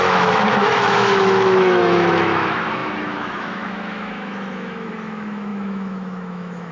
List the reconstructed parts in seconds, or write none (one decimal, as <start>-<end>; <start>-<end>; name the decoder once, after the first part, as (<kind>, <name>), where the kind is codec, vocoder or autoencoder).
0.0-6.7 (autoencoder, DAC-VAE)